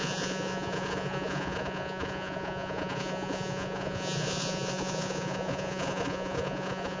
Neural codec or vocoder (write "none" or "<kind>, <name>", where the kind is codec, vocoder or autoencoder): vocoder, Vocos